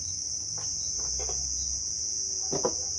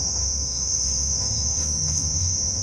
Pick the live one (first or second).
first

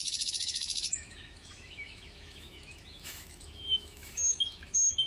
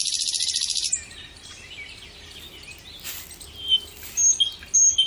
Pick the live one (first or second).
second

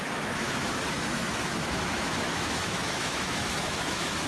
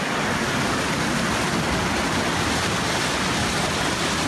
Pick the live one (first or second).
second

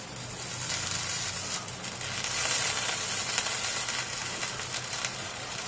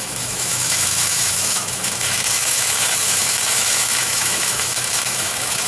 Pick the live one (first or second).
first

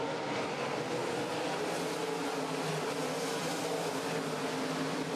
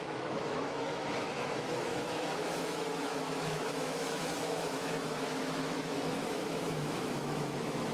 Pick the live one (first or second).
first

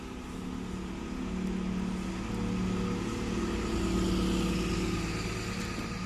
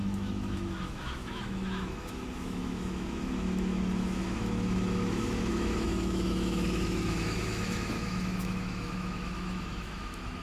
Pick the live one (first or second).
first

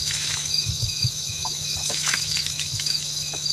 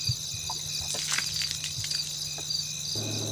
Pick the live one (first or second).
second